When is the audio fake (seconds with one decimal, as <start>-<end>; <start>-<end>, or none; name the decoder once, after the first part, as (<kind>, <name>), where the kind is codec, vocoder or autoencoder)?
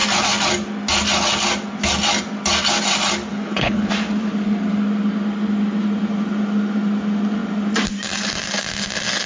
3.3-3.9 (codec, HILCodec)